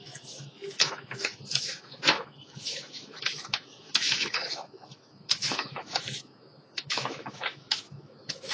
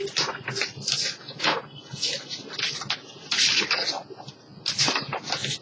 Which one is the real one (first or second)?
second